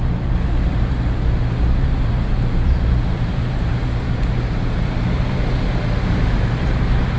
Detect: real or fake fake